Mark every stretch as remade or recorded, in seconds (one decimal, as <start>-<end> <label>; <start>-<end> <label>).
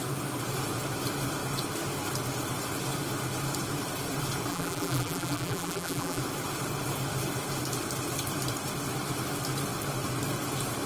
0.0-4.5 recorded; 4.5-6.2 remade; 6.2-10.9 recorded